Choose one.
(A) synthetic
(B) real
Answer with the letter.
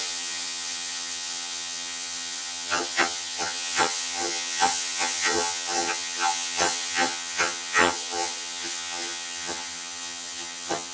A